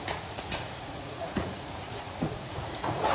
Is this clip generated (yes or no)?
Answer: yes